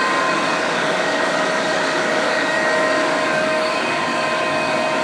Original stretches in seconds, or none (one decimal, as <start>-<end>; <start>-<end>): none

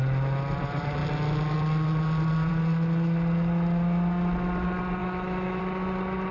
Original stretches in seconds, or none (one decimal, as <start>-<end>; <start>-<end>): 0.0-5.0; 5.6-6.3

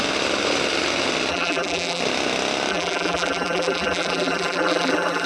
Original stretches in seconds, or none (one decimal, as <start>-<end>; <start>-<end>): 0.0-1.3; 2.0-2.7

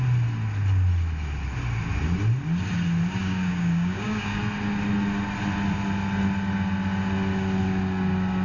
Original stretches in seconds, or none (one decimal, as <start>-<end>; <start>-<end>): 0.0-3.2; 4.4-8.4

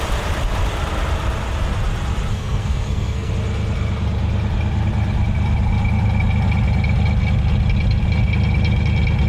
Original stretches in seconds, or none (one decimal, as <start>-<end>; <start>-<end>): 0.0-2.3; 3.3-9.3

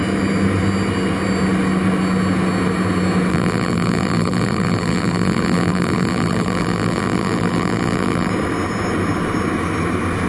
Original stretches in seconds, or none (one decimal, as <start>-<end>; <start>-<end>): 0.0-3.3; 8.3-10.3

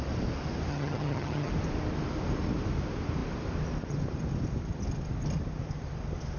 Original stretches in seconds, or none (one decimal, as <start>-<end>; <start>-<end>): 0.0-0.7; 1.5-6.4